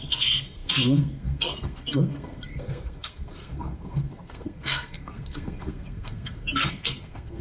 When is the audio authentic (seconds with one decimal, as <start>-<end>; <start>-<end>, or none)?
none